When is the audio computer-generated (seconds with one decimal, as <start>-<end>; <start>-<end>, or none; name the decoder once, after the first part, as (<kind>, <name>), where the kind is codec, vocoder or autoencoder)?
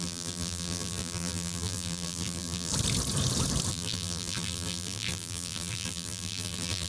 0.0-2.7 (vocoder, BigVGAN v2); 3.7-6.9